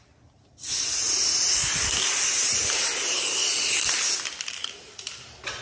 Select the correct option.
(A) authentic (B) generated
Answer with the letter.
A